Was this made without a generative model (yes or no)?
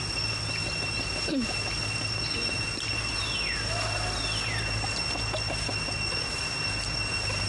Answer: yes